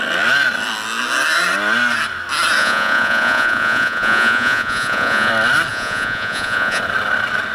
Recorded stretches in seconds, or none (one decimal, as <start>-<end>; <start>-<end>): 0.0-2.6; 5.3-5.7; 6.8-7.5